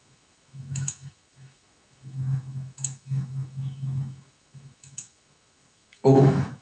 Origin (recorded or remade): remade